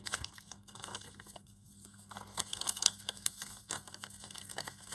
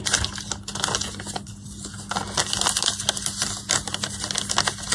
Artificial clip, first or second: first